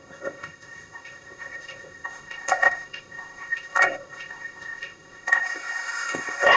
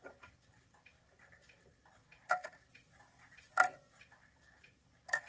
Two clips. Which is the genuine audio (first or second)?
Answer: second